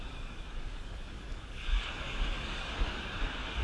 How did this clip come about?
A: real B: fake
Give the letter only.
B